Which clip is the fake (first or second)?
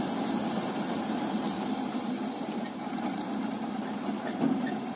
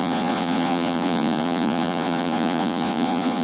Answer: second